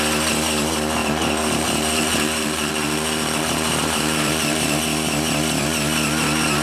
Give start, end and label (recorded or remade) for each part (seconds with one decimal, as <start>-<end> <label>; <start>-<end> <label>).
0.0-1.0 recorded; 1.0-4.8 remade; 4.8-6.6 recorded